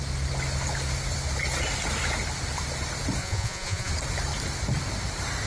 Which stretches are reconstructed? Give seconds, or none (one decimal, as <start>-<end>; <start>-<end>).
3.2-3.9